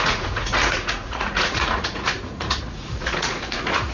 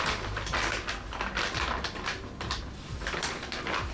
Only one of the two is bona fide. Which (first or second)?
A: second